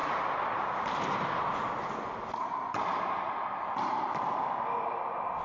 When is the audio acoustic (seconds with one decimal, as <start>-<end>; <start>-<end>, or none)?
1.4-5.4